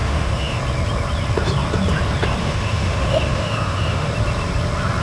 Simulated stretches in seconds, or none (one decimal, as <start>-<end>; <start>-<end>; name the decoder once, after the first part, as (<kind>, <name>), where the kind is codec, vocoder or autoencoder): 0.0-0.6 (autoencoder, DAC-VAE); 2.4-4.1